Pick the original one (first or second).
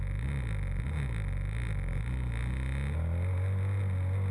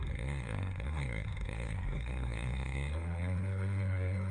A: first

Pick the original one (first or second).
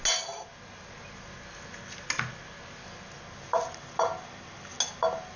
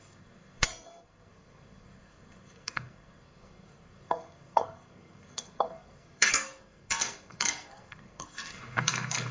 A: first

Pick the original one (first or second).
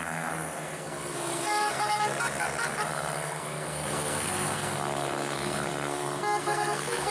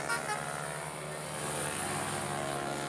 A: second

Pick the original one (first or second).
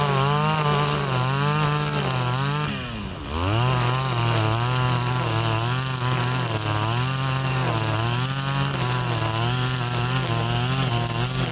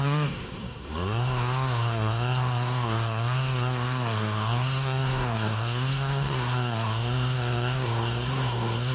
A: first